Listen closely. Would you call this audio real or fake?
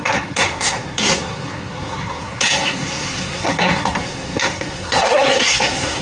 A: fake